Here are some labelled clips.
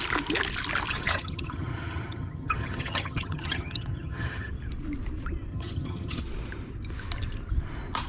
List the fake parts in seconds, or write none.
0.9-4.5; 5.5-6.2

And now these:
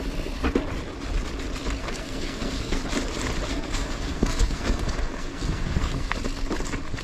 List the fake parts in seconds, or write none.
1.8-2.8; 3.5-6.1

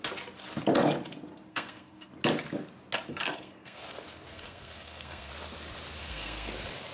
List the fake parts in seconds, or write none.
1.5-2.1; 3.1-3.8; 4.3-5.3; 6.0-6.5

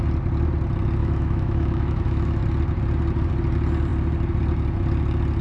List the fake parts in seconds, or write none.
1.0-2.4